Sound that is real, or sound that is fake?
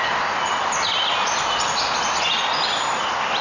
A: real